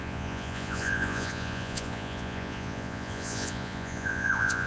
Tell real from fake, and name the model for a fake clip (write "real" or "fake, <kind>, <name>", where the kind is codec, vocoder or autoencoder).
fake, vocoder, Vocos